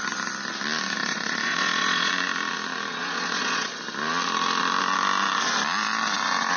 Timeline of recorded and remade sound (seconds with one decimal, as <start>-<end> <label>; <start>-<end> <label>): 0.0-1.0 recorded; 1.0-2.1 remade; 2.1-2.9 recorded; 2.9-3.8 remade; 3.8-6.6 recorded